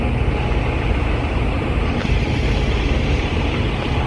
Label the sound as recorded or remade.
recorded